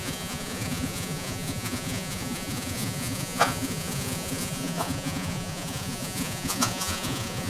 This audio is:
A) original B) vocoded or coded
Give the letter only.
B